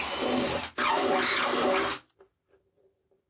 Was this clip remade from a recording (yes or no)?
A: no